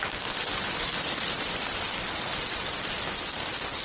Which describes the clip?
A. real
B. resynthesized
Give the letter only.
A